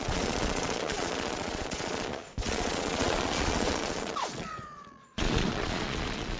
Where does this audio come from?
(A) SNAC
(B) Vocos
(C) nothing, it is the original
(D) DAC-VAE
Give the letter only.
B